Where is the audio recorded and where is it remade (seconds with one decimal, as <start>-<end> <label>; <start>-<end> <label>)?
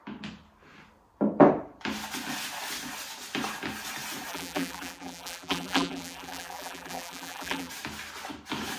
0.0-4.3 recorded; 4.3-7.7 remade; 7.7-8.8 recorded